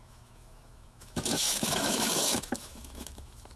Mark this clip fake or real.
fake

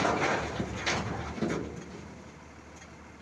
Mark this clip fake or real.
real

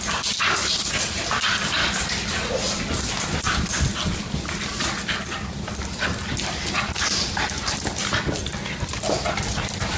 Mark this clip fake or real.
real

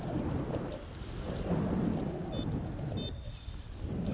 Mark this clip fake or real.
real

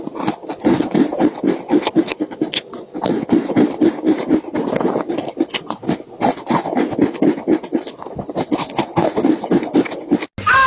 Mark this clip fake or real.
real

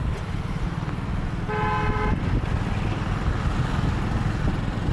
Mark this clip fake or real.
real